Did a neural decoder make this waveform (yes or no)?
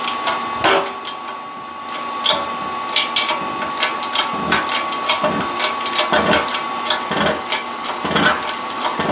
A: no